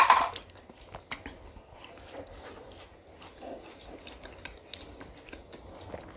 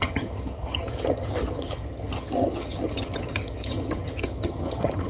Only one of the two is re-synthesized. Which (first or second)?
second